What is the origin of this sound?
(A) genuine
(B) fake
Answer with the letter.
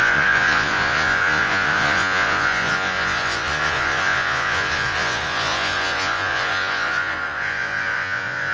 B